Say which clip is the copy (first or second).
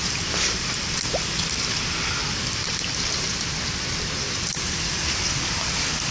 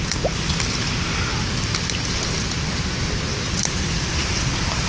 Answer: first